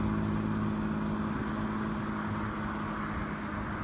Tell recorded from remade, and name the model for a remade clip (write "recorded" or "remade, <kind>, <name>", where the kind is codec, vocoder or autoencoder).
recorded